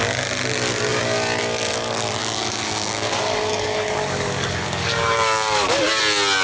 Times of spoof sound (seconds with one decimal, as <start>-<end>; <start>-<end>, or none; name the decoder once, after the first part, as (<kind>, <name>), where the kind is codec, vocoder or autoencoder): 2.2-6.0 (codec, DAC)

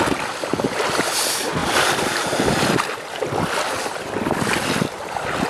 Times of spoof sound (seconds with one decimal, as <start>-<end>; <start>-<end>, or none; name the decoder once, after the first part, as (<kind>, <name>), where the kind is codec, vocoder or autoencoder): none

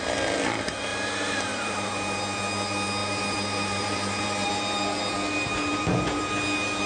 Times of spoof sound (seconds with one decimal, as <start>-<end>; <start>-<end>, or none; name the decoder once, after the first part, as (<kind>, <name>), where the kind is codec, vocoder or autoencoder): 0.9-2.2 (vocoder, BigVGAN v2); 3.0-4.5; 5.5-6.2

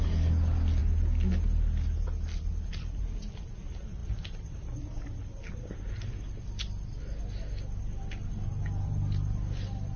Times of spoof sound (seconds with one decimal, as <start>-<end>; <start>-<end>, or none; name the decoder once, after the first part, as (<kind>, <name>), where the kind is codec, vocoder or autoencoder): none

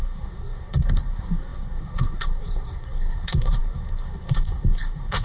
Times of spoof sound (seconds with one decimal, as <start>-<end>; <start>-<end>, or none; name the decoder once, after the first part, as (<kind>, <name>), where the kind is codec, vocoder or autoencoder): 0.0-5.2 (codec, SNAC)

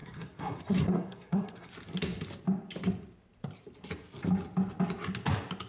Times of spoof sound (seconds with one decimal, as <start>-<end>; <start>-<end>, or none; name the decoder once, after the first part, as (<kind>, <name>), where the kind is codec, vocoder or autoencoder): 0.0-1.7 (codec, SNAC)

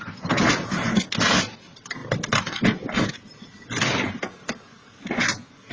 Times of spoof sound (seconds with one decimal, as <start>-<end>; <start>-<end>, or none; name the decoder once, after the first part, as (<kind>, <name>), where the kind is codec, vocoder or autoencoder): none